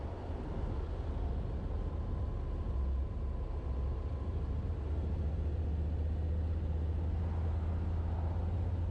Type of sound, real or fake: real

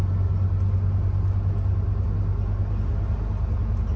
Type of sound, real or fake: real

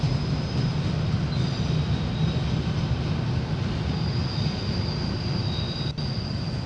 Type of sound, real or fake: real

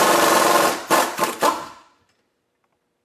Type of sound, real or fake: fake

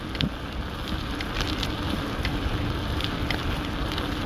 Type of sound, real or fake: real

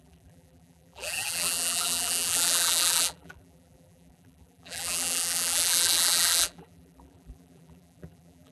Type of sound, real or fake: fake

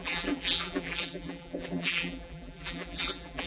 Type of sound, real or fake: fake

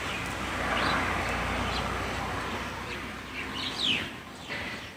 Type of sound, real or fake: real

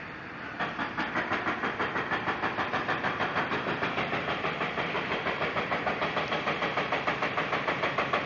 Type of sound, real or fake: fake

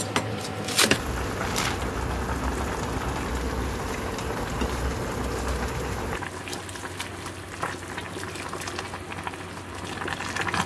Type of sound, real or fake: real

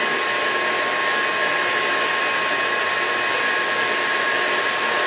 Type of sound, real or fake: real